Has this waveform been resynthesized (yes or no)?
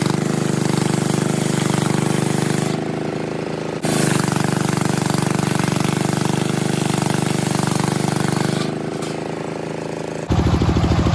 no